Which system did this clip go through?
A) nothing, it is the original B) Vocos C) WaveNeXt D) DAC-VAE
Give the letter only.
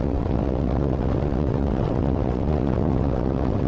C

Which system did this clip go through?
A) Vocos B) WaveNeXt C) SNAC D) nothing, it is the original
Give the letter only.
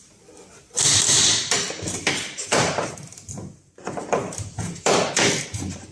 D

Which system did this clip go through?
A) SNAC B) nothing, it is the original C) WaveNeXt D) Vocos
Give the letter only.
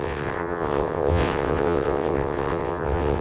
C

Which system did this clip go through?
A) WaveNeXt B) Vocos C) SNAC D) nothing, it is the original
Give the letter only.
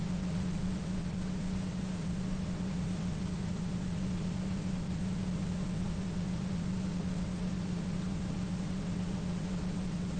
A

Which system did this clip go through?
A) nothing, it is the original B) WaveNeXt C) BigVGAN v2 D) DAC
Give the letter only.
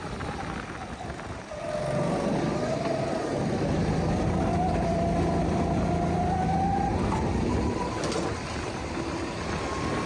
A